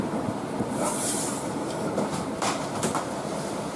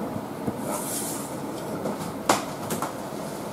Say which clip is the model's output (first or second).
first